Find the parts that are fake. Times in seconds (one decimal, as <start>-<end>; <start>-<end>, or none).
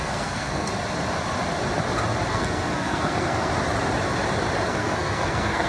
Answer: 0.0-0.7; 2.3-3.5; 4.7-5.7